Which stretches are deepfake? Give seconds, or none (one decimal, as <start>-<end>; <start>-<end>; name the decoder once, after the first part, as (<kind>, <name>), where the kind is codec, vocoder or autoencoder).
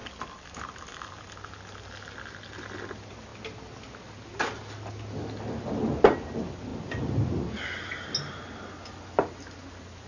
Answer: none